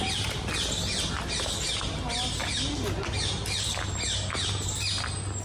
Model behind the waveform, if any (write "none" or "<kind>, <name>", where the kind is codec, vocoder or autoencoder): none